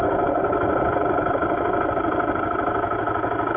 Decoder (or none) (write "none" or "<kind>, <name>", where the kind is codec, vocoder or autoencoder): none